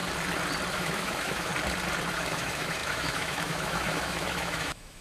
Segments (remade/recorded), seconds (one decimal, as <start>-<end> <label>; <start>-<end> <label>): 0.0-0.7 recorded; 0.7-1.5 remade; 1.5-2.2 recorded; 2.2-5.0 remade

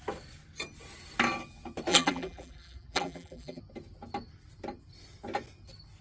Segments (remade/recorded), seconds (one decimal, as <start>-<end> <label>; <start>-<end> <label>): 0.0-1.9 recorded; 1.9-3.6 remade; 3.6-6.0 recorded

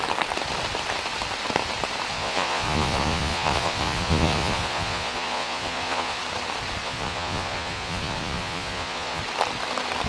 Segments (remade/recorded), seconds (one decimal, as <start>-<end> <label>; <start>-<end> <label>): 0.0-2.1 recorded; 2.1-6.2 remade; 6.2-6.8 recorded; 6.8-9.2 remade; 9.2-10.1 recorded

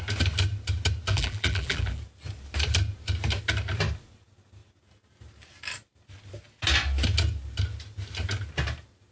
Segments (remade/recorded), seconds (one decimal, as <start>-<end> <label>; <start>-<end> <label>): 0.0-1.1 recorded; 1.1-2.0 remade; 2.0-9.1 recorded

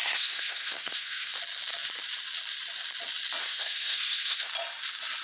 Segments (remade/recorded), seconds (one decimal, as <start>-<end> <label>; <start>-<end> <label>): 0.0-1.3 remade; 1.3-3.4 recorded; 3.4-4.5 remade; 4.5-5.2 recorded

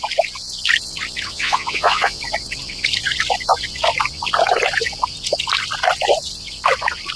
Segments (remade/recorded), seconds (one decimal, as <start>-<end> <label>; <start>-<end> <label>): 0.0-1.3 recorded; 1.3-2.2 remade; 2.2-7.2 recorded

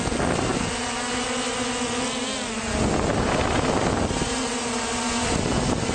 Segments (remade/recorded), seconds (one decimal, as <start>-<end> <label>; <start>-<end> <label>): 0.0-5.9 recorded

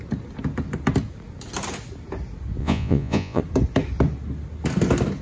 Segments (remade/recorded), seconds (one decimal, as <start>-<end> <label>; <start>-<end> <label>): 0.0-2.6 recorded; 2.6-3.4 remade; 3.4-5.2 recorded